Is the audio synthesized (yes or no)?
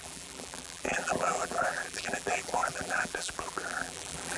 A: yes